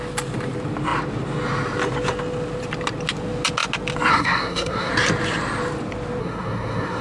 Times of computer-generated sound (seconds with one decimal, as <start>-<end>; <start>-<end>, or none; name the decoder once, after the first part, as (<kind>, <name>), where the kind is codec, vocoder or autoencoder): 4.1-4.9 (codec, SNAC); 6.2-7.0